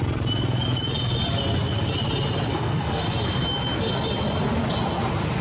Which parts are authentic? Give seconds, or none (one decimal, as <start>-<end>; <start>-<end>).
0.0-2.5; 3.0-5.4